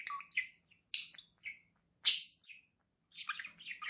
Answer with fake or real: real